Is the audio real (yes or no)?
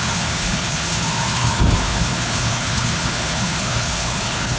no